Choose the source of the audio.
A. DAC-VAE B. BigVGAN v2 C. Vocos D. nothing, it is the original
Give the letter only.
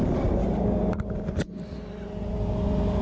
B